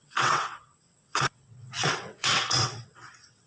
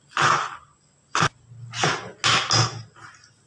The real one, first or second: second